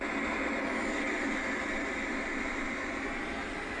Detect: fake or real real